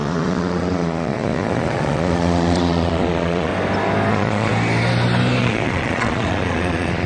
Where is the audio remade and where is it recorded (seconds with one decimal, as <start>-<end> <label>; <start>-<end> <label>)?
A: 0.0-3.5 remade; 3.5-4.1 recorded; 4.1-4.5 remade; 4.5-5.4 recorded; 5.4-7.1 remade